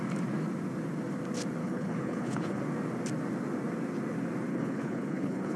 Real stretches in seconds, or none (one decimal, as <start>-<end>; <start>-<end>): 0.0-1.6; 2.6-4.5